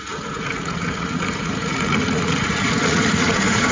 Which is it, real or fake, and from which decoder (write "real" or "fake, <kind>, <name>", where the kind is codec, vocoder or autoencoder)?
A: fake, vocoder, Vocos